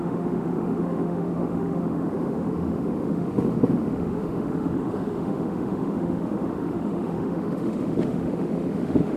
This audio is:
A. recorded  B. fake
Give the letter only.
B